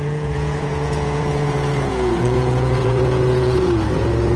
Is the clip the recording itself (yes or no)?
no